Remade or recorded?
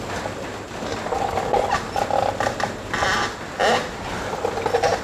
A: recorded